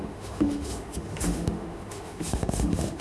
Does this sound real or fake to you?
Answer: fake